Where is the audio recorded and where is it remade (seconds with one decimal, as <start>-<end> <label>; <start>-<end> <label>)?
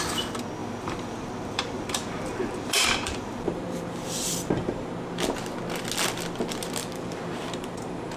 0.0-0.6 recorded; 0.6-4.9 remade; 4.9-6.8 recorded; 6.8-8.2 remade